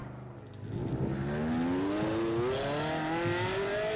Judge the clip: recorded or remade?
recorded